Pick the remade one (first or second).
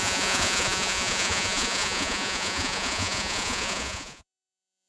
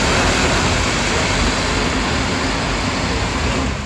first